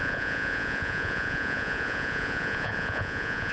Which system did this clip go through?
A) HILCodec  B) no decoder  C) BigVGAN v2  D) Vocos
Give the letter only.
D